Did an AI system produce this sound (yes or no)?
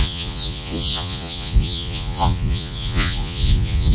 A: yes